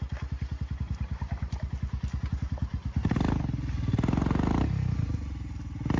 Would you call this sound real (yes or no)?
yes